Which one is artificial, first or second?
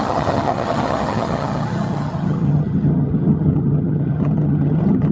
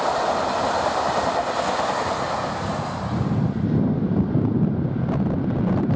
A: first